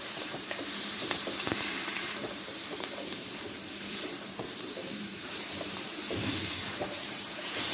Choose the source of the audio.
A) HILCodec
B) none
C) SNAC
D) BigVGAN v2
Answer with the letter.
D